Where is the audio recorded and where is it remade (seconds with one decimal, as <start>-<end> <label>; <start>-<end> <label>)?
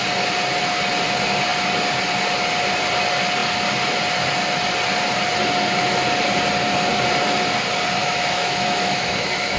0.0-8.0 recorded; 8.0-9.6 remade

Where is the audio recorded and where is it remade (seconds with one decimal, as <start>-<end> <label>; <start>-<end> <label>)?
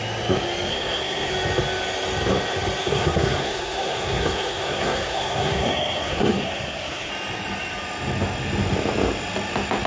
0.0-0.7 recorded; 0.7-1.3 remade; 1.3-2.9 recorded; 2.9-7.1 remade; 7.1-9.9 recorded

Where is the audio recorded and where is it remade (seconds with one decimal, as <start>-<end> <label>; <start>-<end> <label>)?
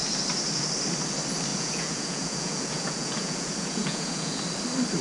0.0-1.5 recorded; 1.5-4.4 remade; 4.4-5.0 recorded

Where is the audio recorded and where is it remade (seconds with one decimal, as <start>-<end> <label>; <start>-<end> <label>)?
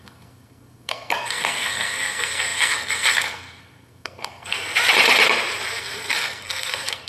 0.0-4.7 remade; 4.7-5.8 recorded; 5.8-7.1 remade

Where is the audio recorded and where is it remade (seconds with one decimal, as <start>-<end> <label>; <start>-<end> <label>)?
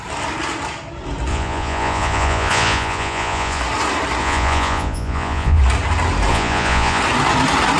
0.0-1.3 recorded; 1.3-3.6 remade; 3.6-4.2 recorded; 4.2-5.6 remade; 5.6-6.3 recorded; 6.3-7.0 remade; 7.0-7.8 recorded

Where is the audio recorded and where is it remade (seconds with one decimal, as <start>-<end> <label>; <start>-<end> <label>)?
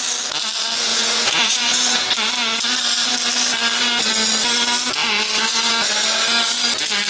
0.0-0.9 recorded; 0.9-2.1 remade; 2.1-7.1 recorded